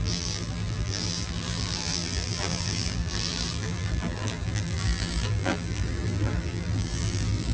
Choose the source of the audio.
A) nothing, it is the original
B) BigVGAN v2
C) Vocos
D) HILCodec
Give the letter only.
B